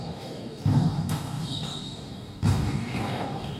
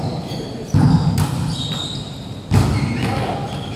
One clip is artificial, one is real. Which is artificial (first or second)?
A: first